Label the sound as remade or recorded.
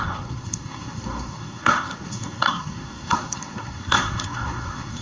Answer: remade